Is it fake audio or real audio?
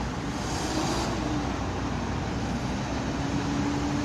real